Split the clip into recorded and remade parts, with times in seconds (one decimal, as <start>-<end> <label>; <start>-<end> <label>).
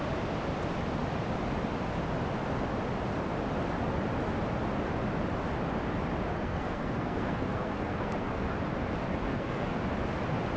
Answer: 0.0-6.3 recorded; 6.3-8.5 remade; 8.5-9.1 recorded; 9.1-9.8 remade; 9.8-10.6 recorded